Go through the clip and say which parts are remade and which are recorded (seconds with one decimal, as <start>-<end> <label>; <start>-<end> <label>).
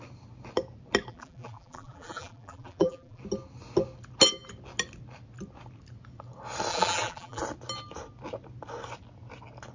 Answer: 0.0-1.1 recorded; 1.1-3.2 remade; 3.2-6.7 recorded; 6.7-7.4 remade; 7.4-9.7 recorded